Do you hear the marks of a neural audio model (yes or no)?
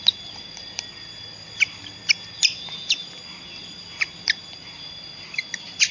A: no